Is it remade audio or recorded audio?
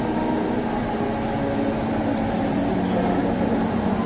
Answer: recorded